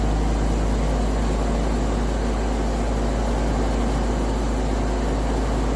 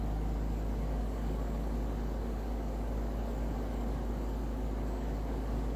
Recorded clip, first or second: first